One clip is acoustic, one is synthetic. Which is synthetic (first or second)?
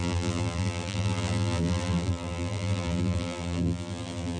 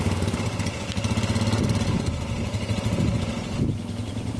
first